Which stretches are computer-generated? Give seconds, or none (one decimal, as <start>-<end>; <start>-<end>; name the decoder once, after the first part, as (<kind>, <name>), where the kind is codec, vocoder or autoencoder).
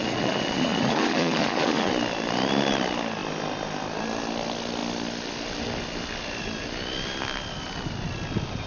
0.0-1.9 (vocoder, Vocos)